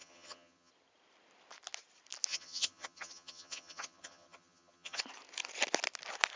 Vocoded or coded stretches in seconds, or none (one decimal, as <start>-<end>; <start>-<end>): 0.0-0.7; 2.3-5.0